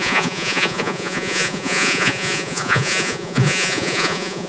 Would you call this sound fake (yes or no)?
yes